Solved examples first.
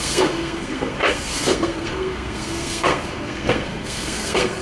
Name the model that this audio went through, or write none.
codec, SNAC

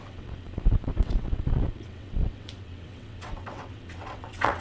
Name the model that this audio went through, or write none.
vocoder, WaveNeXt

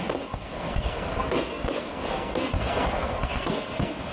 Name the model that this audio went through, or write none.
codec, SNAC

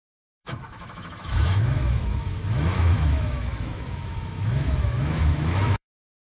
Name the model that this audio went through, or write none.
autoencoder, DAC-VAE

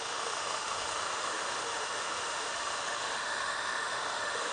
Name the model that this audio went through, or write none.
autoencoder, DAC-VAE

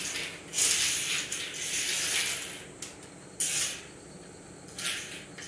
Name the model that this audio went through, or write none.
none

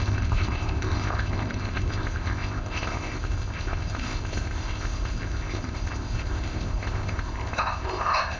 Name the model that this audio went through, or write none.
codec, ZipCodec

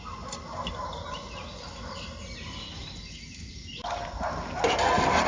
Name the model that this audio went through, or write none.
none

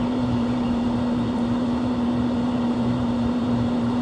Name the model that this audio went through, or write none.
vocoder, BigVGAN v2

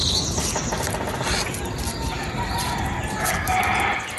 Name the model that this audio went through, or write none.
none